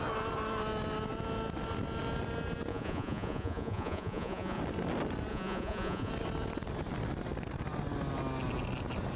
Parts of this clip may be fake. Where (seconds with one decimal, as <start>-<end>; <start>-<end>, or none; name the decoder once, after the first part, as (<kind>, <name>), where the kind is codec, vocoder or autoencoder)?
2.7-4.6 (vocoder, Vocos); 5.3-6.1